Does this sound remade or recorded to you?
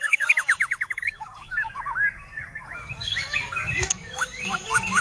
remade